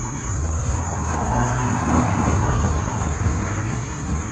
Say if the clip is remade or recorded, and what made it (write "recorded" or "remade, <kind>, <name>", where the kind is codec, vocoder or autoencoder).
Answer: remade, codec, SNAC